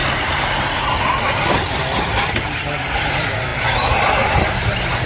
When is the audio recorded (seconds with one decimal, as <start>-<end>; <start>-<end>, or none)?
3.5-4.5